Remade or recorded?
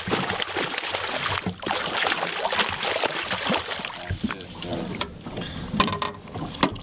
recorded